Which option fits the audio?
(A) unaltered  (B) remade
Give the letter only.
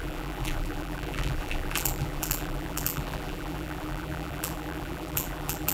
B